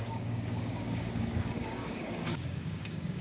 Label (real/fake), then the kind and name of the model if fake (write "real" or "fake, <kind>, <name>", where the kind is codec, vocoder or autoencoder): fake, codec, DAC